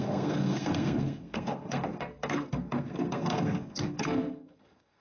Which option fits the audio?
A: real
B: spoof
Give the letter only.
B